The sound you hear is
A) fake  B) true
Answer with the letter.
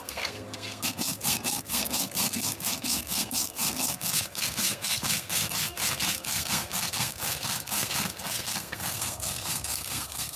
A